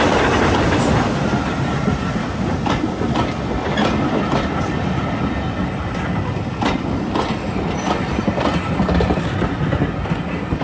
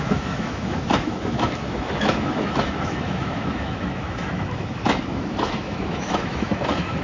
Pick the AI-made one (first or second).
second